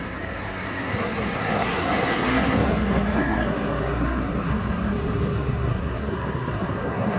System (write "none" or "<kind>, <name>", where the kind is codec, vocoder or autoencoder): codec, SNAC